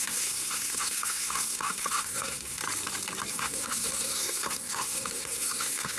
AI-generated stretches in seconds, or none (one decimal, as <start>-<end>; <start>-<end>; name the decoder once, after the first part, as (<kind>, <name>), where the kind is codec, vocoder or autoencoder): 0.0-2.6 (codec, SNAC); 3.3-6.0